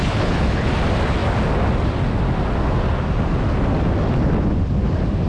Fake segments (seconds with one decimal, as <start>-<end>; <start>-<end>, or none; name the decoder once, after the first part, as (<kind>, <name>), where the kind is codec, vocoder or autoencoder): 0.0-0.7 (codec, HILCodec)